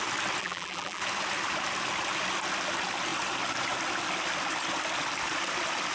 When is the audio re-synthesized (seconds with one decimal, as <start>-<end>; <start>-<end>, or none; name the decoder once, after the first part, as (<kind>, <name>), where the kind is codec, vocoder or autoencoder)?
0.4-1.0 (vocoder, BigVGAN v2)